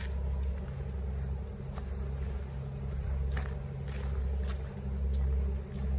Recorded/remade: recorded